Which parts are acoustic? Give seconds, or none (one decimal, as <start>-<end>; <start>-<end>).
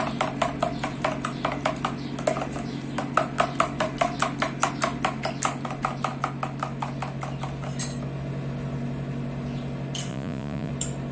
0.0-10.1; 10.7-11.1